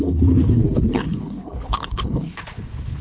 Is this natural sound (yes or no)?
no